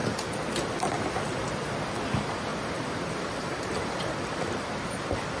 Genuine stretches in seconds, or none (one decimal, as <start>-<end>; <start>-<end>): 0.0-2.5; 4.1-5.4